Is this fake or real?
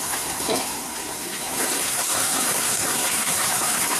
fake